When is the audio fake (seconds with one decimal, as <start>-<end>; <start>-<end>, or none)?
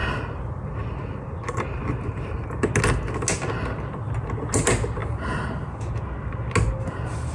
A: 5.0-5.8